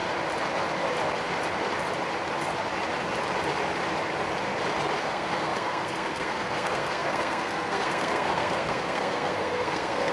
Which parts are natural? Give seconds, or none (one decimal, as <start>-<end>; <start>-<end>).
0.0-5.0